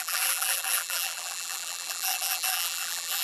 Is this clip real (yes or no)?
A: no